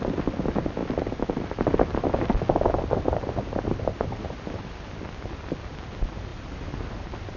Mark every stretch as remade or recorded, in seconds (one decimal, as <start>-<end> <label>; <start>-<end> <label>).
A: 0.0-7.4 recorded